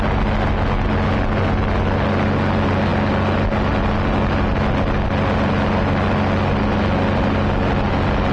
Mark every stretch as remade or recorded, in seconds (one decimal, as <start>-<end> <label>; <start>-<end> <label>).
0.0-8.3 recorded